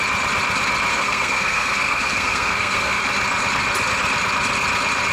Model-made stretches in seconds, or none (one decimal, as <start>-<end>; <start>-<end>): 0.9-3.0